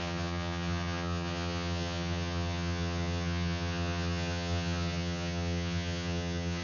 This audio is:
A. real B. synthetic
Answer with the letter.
B